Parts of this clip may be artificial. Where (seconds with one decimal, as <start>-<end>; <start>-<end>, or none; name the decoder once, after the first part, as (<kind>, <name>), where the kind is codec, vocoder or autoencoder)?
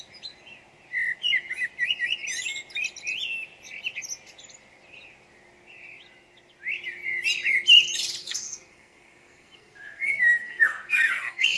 8.2-11.6 (codec, SNAC)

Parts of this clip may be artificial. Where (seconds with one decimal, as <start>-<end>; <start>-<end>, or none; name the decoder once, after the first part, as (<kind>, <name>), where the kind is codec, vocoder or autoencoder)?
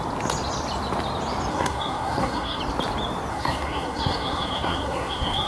1.5-2.6 (codec, SNAC); 3.3-5.5